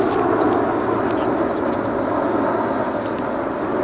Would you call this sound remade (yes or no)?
no